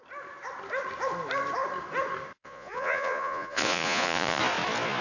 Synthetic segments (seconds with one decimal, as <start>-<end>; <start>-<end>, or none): 2.4-4.4